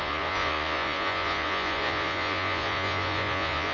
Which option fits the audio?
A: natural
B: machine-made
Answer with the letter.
B